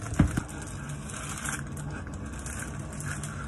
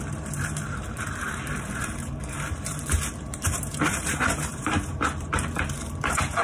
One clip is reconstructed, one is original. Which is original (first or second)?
first